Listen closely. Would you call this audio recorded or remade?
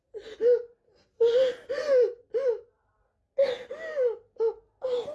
recorded